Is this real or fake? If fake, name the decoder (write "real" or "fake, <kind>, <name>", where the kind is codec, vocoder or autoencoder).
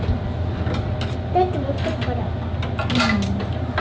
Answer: real